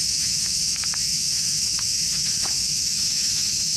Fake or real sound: fake